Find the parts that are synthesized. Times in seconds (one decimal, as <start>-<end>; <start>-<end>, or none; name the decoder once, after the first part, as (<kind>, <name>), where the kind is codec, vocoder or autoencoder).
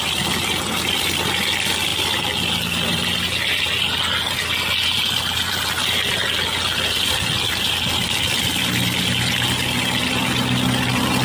none